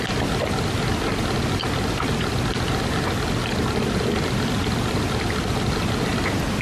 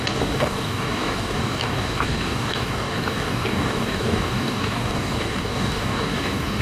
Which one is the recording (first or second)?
first